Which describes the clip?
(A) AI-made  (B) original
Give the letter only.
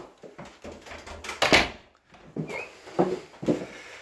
B